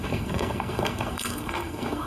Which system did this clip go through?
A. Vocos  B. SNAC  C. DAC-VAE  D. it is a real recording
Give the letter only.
B